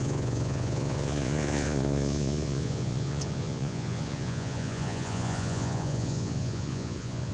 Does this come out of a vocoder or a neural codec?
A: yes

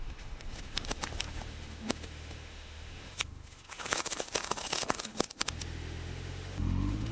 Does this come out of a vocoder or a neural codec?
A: yes